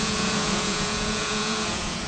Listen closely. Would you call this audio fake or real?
fake